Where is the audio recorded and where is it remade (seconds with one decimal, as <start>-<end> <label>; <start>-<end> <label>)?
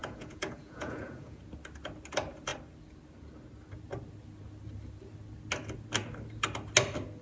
0.0-1.4 remade; 1.4-7.2 recorded